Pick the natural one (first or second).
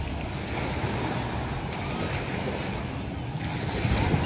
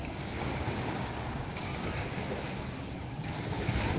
first